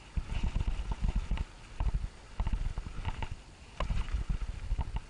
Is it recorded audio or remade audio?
recorded